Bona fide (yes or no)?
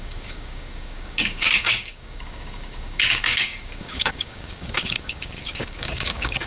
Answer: no